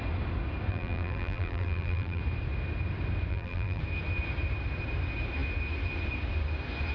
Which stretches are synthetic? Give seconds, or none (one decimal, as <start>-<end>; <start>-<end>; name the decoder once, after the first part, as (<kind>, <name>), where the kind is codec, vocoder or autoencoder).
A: 0.7-2.2 (vocoder, BigVGAN v2); 3.3-3.8